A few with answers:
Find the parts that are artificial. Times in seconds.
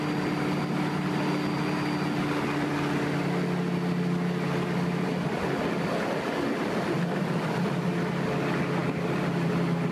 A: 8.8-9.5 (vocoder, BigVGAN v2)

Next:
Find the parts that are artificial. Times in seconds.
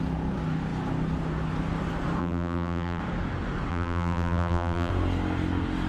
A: 2.2-3.0 (vocoder, BigVGAN v2); 3.7-4.9